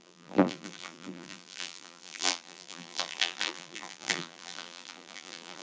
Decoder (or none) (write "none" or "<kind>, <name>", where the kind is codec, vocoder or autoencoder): vocoder, BigVGAN v2